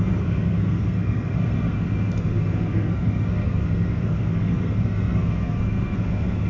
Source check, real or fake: fake